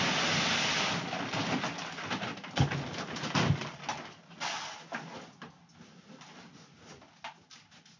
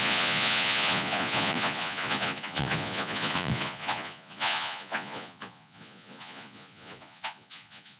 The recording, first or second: first